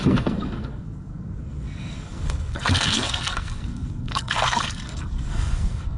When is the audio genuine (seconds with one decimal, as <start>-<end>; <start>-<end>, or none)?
none